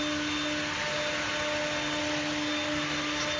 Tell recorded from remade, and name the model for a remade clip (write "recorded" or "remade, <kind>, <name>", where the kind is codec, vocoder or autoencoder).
recorded